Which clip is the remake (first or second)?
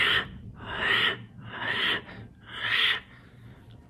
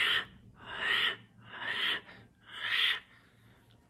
first